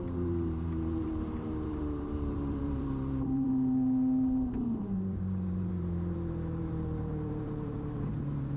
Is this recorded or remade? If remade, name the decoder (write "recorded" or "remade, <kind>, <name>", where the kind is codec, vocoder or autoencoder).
remade, vocoder, BigVGAN v2